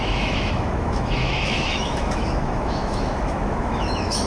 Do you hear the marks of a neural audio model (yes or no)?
yes